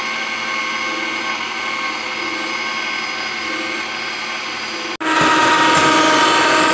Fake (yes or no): no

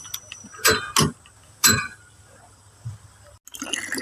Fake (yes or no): no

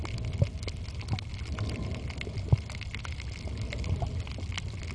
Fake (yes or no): no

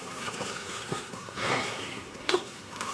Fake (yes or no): yes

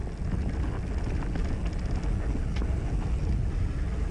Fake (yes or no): no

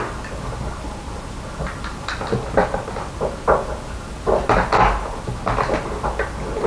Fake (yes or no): no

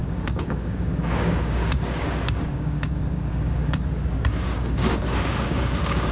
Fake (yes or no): yes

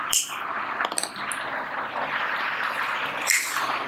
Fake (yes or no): no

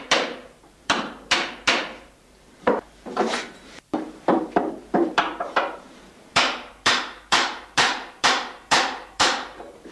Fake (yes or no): yes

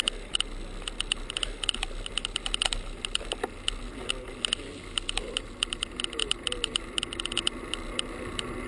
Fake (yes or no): no